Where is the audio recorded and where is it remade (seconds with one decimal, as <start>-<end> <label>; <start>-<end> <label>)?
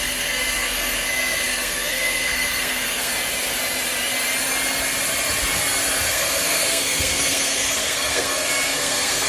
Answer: 0.0-3.1 remade; 3.1-6.1 recorded; 6.1-9.3 remade